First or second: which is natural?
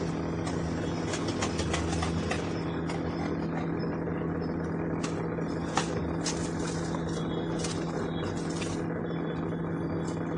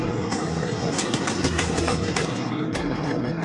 first